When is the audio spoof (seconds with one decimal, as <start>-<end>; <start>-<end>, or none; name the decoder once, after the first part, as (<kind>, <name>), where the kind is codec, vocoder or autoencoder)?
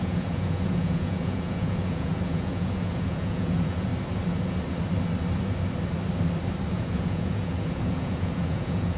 0.0-3.9 (vocoder, Vocos); 6.7-9.0